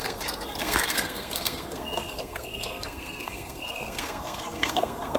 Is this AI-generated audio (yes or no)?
yes